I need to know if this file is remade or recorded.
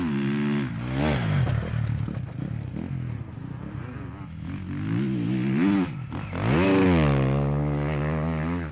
recorded